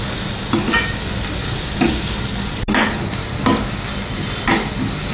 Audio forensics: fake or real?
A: real